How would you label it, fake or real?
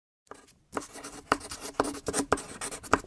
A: real